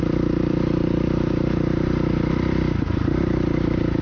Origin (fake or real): fake